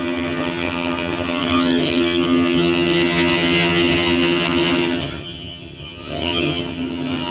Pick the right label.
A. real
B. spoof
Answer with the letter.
B